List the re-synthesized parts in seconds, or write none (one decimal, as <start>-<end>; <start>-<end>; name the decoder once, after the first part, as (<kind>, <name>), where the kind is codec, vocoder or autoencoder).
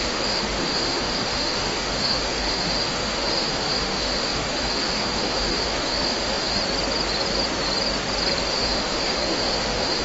0.0-6.6 (autoencoder, DAC-VAE); 8.5-10.0